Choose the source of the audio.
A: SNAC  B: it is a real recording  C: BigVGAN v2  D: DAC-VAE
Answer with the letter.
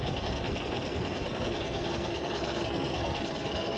A